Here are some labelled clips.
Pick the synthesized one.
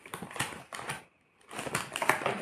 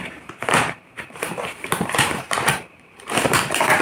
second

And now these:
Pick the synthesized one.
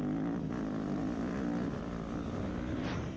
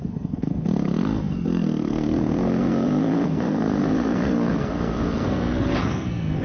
second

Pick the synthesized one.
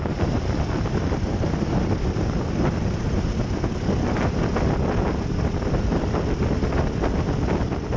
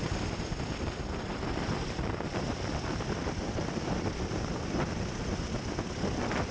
second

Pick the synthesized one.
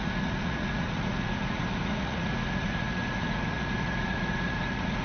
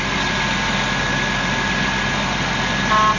first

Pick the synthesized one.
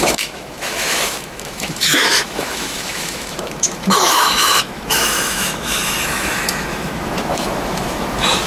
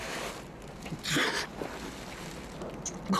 first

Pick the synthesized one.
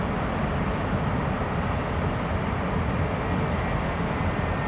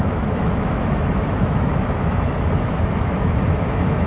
second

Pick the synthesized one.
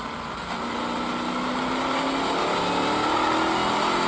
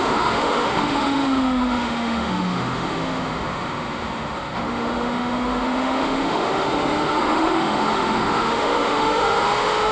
second